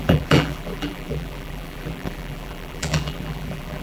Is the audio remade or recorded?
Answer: remade